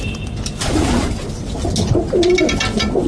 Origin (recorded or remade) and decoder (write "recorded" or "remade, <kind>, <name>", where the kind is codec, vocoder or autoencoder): recorded